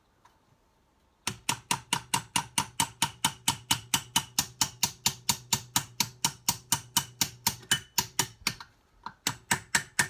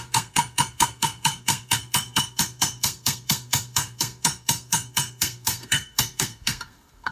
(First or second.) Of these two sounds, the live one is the first